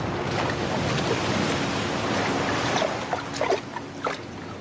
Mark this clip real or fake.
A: real